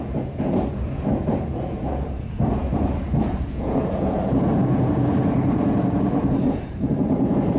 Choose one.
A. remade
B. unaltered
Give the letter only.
A